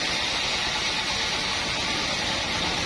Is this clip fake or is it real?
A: real